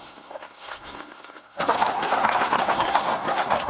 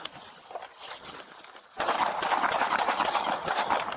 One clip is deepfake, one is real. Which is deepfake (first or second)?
first